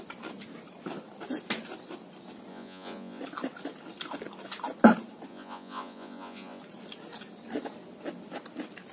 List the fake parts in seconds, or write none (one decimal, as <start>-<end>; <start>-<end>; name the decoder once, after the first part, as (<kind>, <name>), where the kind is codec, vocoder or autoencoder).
2.5-3.2 (vocoder, Vocos); 5.3-6.6

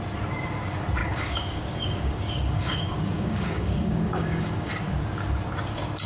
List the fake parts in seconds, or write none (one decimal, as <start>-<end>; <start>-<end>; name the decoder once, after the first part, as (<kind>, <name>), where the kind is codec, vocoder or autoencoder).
1.0-4.7 (codec, DAC)

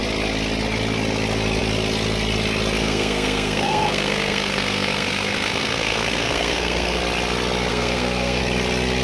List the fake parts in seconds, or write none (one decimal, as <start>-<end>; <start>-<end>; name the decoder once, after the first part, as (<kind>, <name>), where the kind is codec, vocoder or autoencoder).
2.8-7.0 (codec, SNAC); 7.7-8.4

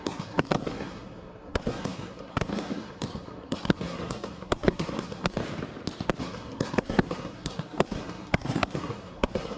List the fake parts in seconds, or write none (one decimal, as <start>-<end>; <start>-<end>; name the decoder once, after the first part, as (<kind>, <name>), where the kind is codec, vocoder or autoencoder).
0.0-5.4 (codec, SNAC); 6.2-9.6

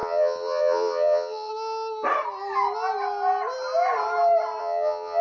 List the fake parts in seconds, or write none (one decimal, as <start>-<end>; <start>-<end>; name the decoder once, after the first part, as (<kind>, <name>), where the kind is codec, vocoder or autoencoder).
0.0-1.5 (vocoder, Vocos); 4.6-5.2

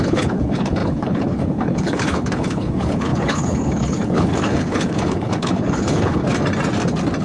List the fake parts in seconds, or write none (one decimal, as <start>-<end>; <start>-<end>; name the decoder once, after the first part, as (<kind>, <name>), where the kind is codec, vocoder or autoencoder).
0.0-6.2 (codec, HILCodec)

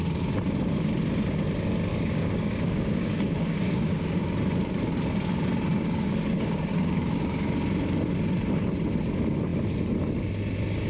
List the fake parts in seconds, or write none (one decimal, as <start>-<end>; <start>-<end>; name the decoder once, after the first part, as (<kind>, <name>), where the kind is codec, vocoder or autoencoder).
1.9-4.2 (codec, DAC); 5.7-7.2